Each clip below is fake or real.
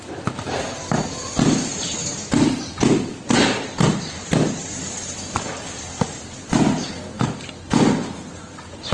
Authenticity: real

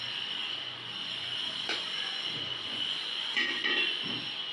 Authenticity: fake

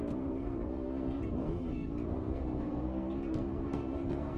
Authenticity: fake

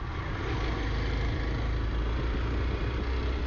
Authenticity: real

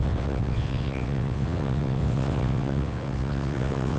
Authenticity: fake